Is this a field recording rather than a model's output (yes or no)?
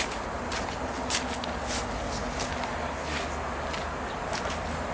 yes